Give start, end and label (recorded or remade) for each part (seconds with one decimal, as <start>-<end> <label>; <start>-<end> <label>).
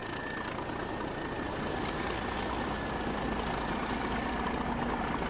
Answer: 0.0-5.3 recorded